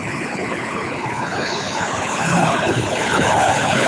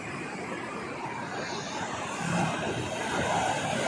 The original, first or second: second